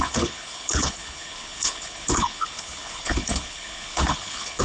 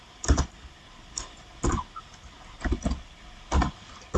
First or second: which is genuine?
second